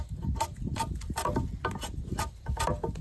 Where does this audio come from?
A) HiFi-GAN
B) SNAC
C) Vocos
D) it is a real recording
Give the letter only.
D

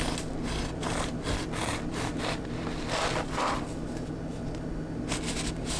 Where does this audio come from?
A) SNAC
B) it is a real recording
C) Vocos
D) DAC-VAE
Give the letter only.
B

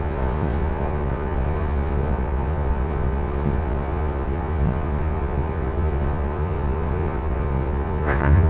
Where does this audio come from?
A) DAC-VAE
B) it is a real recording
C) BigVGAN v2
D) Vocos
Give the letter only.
D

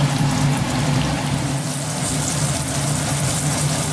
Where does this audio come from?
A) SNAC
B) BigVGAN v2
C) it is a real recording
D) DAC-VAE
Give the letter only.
C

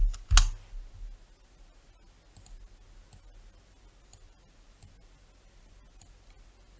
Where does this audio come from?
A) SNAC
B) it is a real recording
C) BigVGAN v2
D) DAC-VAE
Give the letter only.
B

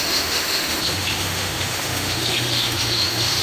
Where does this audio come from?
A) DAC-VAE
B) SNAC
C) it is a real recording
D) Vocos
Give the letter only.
A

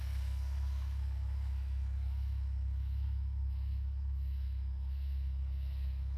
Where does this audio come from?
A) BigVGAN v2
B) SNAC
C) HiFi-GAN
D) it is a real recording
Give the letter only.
B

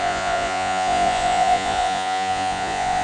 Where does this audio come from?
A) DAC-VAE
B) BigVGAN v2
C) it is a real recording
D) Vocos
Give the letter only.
D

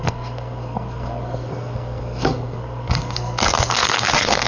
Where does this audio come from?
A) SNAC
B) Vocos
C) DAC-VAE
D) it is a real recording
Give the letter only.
A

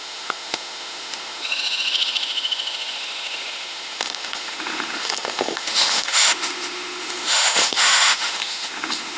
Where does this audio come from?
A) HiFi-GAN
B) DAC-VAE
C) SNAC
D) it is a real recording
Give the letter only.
B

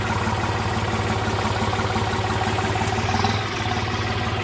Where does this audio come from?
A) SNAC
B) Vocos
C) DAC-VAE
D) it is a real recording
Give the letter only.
D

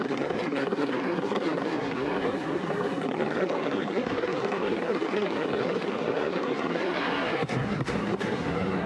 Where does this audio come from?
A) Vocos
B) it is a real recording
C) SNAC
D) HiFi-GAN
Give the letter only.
C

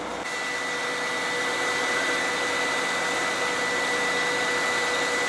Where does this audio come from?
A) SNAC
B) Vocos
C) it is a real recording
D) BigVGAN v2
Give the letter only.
C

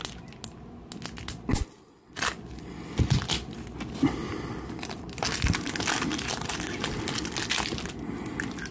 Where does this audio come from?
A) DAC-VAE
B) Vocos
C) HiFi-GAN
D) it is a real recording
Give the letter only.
D